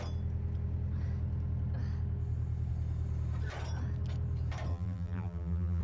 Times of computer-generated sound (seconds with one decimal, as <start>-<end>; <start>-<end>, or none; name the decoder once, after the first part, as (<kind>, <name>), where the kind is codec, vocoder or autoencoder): 4.7-5.8 (vocoder, BigVGAN v2)